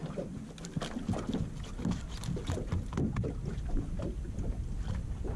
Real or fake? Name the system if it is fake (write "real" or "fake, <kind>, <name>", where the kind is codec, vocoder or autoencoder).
real